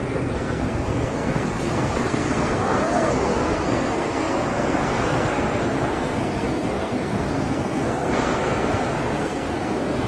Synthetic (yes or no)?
yes